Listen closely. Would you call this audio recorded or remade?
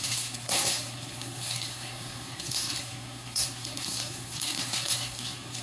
remade